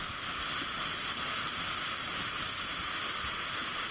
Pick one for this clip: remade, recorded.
recorded